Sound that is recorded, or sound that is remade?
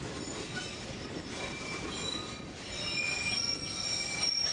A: recorded